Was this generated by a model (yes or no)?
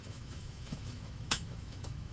yes